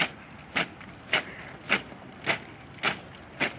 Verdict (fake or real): real